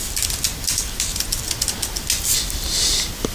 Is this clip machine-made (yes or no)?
no